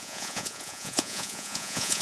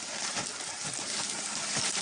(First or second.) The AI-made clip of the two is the first